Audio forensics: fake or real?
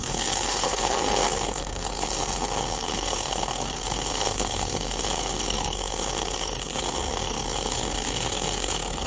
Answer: fake